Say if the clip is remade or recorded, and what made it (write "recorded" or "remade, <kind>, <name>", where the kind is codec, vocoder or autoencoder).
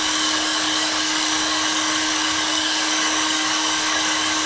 remade, codec, DAC